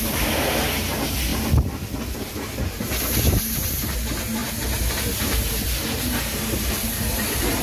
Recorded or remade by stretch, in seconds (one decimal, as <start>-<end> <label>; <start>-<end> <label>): 0.0-1.3 remade; 1.3-2.1 recorded; 2.1-7.6 remade